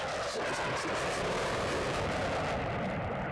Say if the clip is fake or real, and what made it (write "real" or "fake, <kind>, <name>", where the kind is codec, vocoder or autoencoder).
real